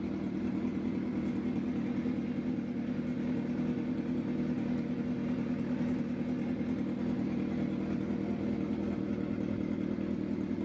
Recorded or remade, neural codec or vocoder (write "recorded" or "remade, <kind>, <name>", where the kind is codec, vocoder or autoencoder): recorded